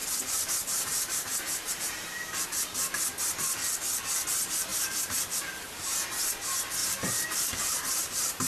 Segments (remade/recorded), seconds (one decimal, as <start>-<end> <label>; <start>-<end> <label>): 0.0-2.4 remade; 2.4-4.7 recorded; 4.7-5.8 remade; 5.8-6.8 recorded; 6.8-8.5 remade